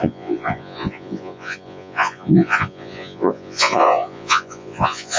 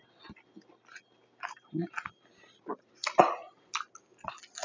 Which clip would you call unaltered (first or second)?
second